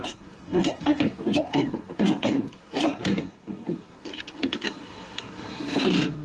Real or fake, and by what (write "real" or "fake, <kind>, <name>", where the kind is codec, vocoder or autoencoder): fake, codec, SNAC